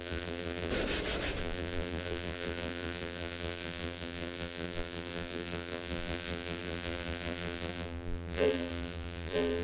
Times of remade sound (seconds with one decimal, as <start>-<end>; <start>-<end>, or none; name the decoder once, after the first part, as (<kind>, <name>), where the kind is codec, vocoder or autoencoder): 0.0-0.7 (vocoder, BigVGAN v2); 1.4-9.6